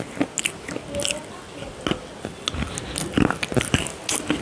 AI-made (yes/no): no